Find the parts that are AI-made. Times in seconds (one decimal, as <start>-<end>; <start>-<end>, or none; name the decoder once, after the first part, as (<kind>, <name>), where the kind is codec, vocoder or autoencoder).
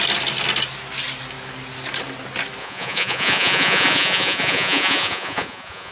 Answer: 2.6-5.9 (vocoder, Vocos)